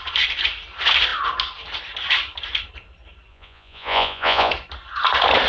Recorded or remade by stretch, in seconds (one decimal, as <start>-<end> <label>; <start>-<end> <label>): 0.0-3.3 recorded; 3.3-4.5 remade; 4.5-5.5 recorded